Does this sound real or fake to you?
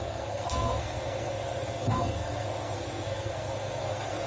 fake